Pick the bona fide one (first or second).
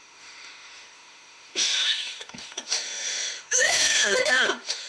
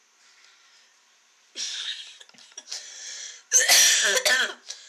second